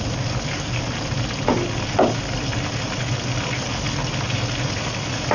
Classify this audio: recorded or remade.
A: recorded